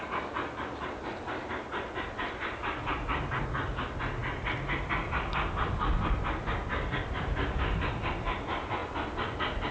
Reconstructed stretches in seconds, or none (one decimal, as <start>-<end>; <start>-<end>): none